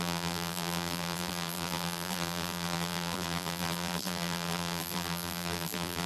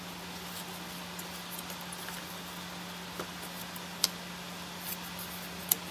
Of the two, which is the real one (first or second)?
second